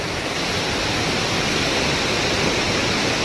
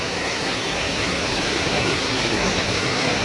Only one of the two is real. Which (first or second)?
first